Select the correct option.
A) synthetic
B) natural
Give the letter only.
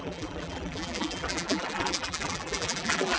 A